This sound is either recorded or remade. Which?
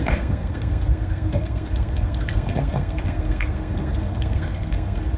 remade